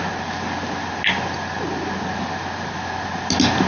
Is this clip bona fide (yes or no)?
yes